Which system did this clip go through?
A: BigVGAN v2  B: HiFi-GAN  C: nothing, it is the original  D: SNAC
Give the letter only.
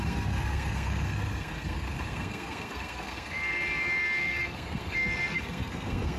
D